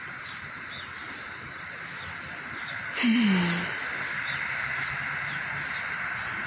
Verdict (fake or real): real